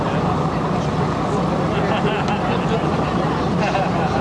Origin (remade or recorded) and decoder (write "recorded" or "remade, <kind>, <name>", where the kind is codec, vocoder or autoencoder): recorded